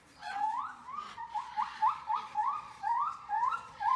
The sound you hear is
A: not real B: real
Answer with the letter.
A